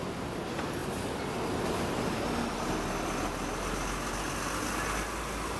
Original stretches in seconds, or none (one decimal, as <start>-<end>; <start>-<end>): 0.0-5.6